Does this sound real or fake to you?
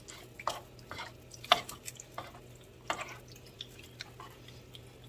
real